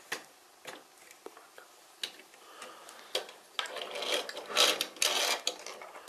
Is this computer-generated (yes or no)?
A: no